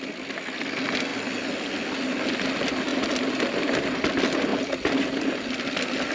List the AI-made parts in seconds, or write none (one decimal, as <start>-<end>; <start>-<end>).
none